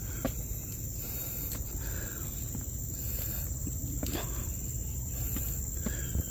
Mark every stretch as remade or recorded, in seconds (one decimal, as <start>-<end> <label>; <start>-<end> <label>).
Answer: 0.0-4.8 recorded; 4.8-5.4 remade; 5.4-6.3 recorded